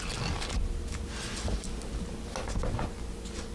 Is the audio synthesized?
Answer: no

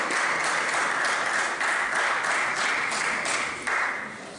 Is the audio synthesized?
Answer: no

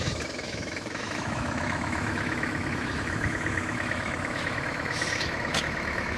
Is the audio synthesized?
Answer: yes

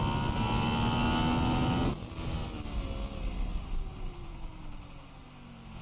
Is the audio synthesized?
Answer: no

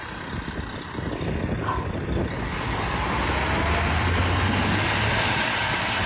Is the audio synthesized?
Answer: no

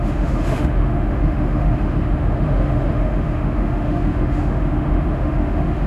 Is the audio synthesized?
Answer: yes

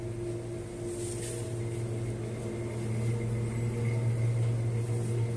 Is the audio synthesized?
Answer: no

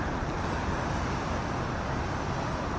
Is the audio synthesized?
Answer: no